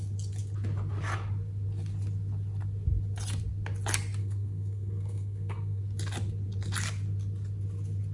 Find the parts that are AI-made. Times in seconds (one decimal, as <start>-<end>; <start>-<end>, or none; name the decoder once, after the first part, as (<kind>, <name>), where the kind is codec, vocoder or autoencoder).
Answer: 4.2-5.8 (codec, SNAC)

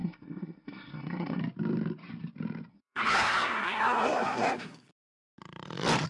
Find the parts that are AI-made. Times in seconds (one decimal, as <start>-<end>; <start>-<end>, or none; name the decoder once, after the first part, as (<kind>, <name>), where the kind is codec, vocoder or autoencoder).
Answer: 0.0-1.4 (codec, SNAC); 2.7-4.9

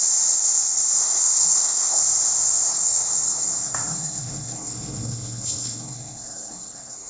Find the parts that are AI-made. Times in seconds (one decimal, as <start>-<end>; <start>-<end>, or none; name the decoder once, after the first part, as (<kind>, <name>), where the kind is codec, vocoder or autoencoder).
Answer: 1.0-2.0 (codec, SNAC); 2.7-7.1